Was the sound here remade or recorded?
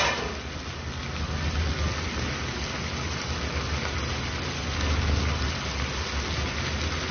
recorded